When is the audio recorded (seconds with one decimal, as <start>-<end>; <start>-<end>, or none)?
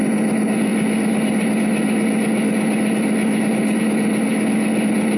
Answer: 0.0-5.2